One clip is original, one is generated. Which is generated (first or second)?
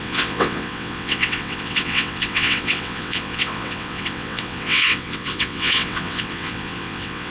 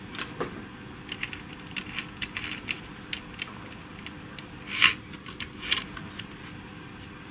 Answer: first